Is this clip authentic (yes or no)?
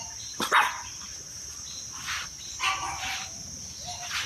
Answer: yes